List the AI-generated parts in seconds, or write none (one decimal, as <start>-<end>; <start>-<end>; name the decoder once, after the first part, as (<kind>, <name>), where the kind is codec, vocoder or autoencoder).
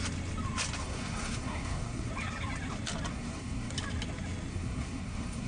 0.8-2.1 (codec, SNAC); 3.1-3.7; 4.5-5.5